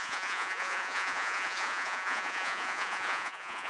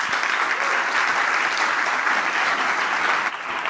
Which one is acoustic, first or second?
second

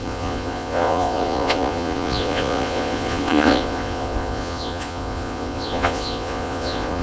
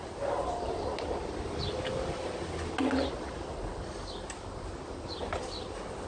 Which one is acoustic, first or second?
second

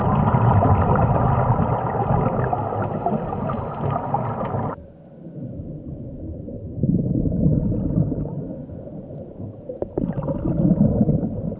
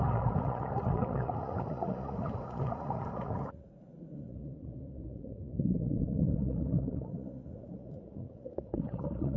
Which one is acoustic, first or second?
first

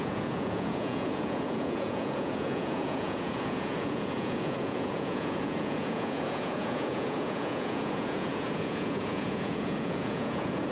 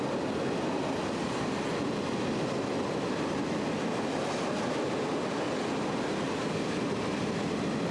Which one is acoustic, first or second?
second